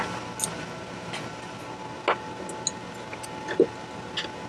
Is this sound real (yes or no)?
yes